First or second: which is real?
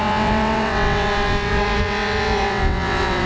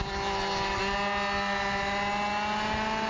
second